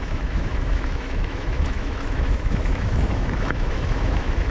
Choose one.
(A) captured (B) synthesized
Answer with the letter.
B